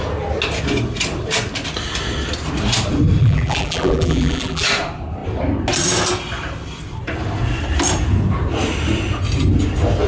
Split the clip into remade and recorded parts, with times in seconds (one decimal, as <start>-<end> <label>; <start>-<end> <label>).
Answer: 0.0-3.2 recorded; 3.2-4.6 remade; 4.6-10.1 recorded